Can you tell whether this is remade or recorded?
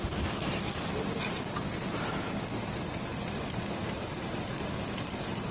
recorded